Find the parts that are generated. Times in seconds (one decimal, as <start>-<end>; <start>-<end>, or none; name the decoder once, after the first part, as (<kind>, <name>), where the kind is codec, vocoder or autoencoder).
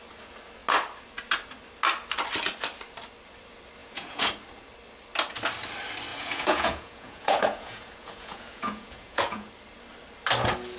3.8-4.3 (vocoder, Vocos); 6.1-9.5